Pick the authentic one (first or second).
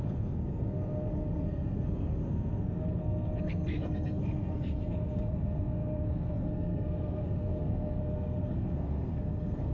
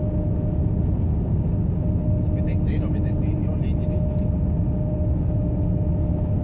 second